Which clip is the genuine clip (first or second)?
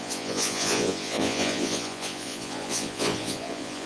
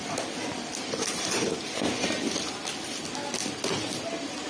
second